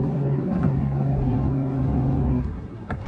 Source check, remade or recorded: remade